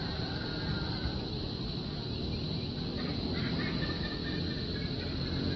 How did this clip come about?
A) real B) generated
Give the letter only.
A